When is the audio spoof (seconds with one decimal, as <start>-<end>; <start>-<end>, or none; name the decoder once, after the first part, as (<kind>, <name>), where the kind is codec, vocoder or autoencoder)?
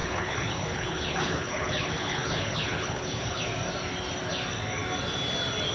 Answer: 0.0-3.4 (codec, HILCodec)